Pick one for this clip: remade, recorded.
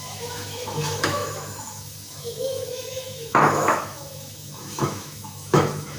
remade